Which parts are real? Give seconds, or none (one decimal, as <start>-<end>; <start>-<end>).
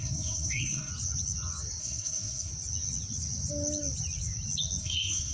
0.9-1.8; 2.5-4.8